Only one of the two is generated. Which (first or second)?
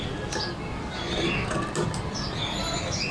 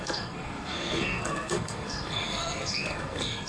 second